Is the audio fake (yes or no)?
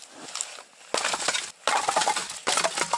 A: no